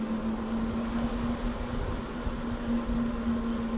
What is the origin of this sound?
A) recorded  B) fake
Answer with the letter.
A